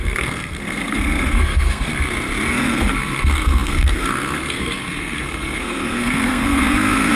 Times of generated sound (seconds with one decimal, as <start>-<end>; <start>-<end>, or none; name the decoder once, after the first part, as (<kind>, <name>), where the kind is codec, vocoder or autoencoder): 0.0-1.9 (codec, SNAC); 2.5-7.2